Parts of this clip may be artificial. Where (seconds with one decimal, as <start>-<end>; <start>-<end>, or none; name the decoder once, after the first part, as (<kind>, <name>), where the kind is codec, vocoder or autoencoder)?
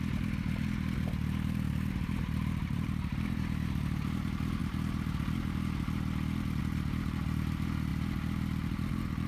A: 0.0-4.6 (vocoder, BigVGAN v2); 6.6-7.9